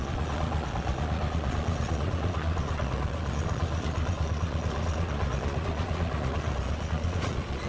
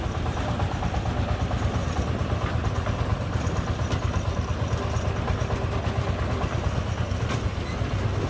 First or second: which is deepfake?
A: first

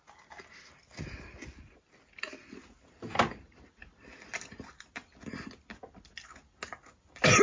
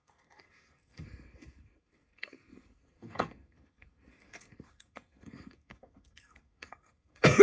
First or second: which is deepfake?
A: second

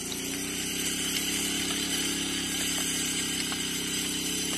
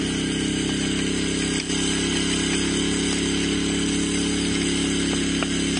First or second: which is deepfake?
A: first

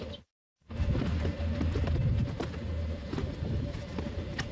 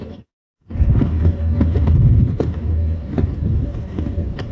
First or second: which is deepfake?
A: second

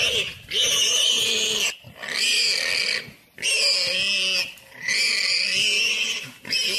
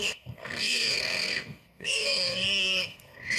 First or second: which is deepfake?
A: second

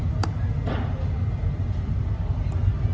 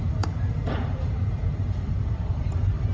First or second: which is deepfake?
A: second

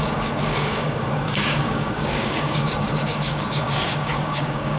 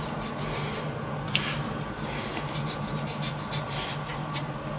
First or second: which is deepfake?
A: first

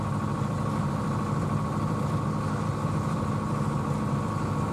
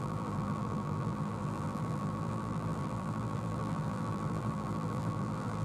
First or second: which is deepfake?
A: second